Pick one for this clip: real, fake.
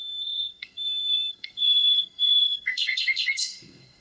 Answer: fake